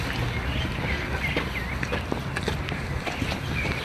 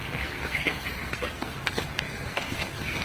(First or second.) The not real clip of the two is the second